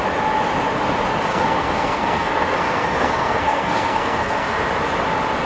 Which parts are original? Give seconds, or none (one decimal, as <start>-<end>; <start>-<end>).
0.0-1.3; 4.6-5.5